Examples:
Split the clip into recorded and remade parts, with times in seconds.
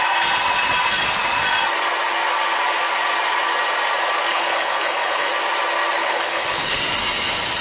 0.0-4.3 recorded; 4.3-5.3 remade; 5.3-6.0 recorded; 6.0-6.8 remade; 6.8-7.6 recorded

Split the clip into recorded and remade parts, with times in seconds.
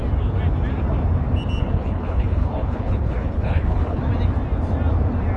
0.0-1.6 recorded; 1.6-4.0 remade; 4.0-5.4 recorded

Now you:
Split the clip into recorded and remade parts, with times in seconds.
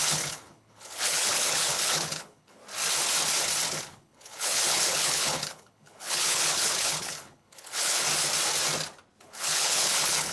0.0-2.6 remade; 2.6-3.8 recorded; 3.8-8.1 remade; 8.1-9.2 recorded; 9.2-10.3 remade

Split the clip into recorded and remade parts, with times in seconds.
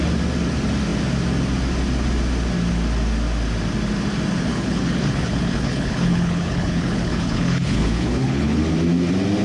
0.0-4.5 recorded; 4.5-8.6 remade; 8.6-9.4 recorded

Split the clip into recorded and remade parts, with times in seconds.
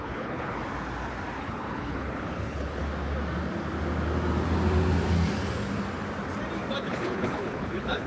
0.0-0.5 remade; 0.5-1.4 recorded; 1.4-2.8 remade; 2.8-6.8 recorded; 6.8-8.1 remade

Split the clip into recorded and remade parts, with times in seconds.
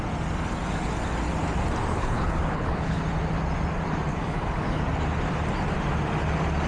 0.0-1.9 recorded; 1.9-3.0 remade; 3.0-4.1 recorded; 4.1-4.8 remade; 4.8-6.7 recorded